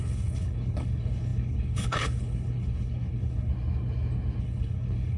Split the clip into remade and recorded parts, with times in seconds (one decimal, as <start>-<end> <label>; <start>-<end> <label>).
0.0-3.5 remade; 3.5-4.4 recorded; 4.4-5.2 remade

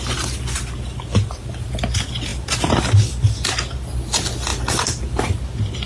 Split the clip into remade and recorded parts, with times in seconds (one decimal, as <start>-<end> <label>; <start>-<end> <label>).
0.0-5.9 recorded

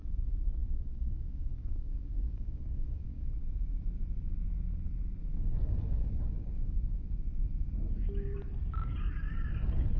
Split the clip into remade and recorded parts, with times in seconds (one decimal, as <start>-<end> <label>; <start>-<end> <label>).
0.0-0.6 recorded; 0.6-3.3 remade; 3.3-5.3 recorded; 5.3-7.1 remade; 7.1-10.0 recorded

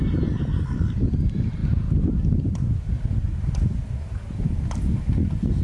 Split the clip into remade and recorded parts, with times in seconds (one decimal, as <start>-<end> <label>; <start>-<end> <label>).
0.0-5.6 recorded